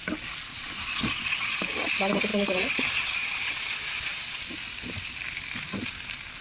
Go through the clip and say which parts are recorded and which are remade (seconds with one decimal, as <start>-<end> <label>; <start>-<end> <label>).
0.0-0.4 recorded; 0.4-1.6 remade; 1.6-2.3 recorded; 2.3-4.4 remade; 4.4-6.4 recorded